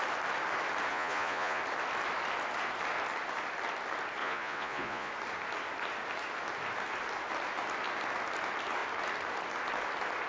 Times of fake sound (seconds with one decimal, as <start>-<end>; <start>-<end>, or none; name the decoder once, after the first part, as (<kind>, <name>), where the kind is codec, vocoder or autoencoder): 0.9-1.6 (vocoder, Vocos); 4.2-5.1